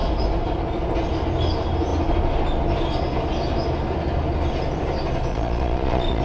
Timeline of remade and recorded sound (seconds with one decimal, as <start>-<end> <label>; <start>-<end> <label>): 0.0-5.3 recorded; 5.3-6.2 remade